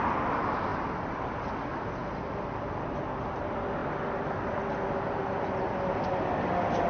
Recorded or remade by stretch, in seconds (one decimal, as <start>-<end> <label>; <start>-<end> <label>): 0.0-0.7 recorded; 0.7-1.2 remade; 1.2-3.8 recorded; 3.8-4.6 remade; 4.6-6.9 recorded